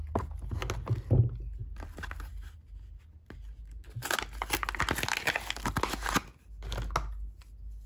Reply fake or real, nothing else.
real